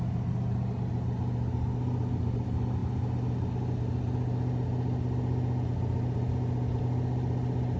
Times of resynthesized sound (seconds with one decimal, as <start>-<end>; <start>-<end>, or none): none